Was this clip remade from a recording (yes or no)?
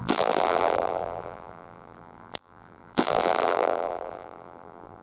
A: yes